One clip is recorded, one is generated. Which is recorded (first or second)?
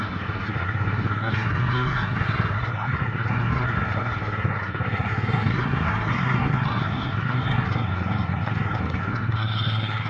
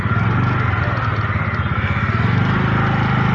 second